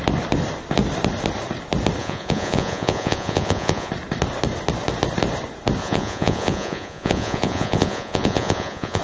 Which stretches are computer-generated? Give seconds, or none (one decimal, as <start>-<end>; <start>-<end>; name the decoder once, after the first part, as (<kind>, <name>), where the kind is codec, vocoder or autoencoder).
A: 2.0-3.9 (vocoder, Vocos); 5.8-9.0